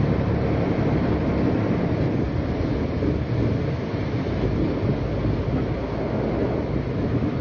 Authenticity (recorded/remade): recorded